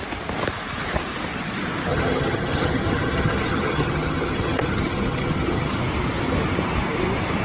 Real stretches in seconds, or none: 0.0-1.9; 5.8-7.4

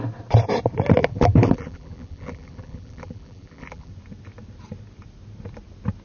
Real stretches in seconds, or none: 0.0-1.0; 3.9-6.0